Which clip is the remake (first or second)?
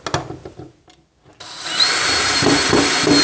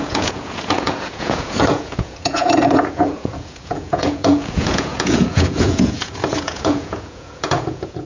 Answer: second